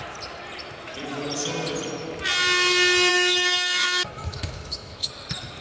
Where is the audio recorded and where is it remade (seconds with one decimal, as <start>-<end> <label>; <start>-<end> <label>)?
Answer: 0.0-3.1 recorded; 3.1-5.1 remade; 5.1-5.6 recorded